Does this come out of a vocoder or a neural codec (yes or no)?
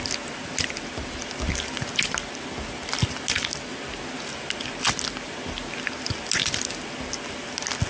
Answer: no